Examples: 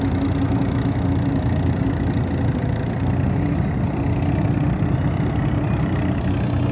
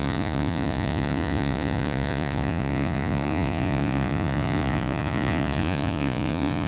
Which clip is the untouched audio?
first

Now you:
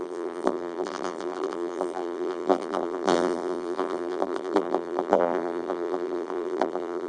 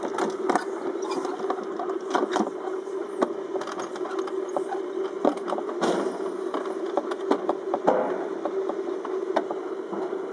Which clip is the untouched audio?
second